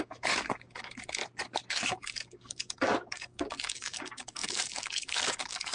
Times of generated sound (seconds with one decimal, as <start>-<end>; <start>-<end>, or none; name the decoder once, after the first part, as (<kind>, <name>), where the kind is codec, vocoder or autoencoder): 0.0-1.2 (codec, DAC); 1.7-5.7